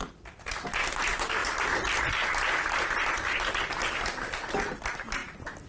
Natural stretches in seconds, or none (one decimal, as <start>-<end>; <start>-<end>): 0.0-5.7